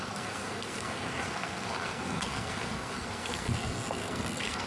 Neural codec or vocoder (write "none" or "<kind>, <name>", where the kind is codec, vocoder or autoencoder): codec, SNAC